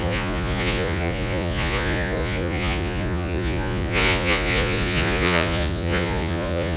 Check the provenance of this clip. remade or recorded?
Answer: remade